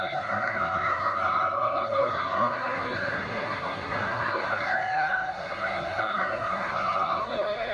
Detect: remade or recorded remade